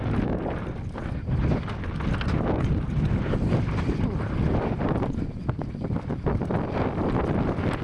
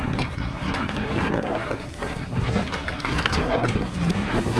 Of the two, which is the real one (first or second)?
first